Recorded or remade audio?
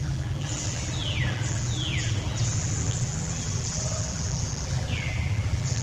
remade